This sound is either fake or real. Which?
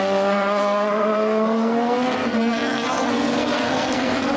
fake